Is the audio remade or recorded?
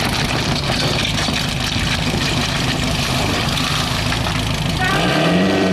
remade